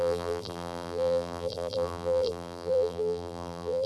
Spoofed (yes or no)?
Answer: yes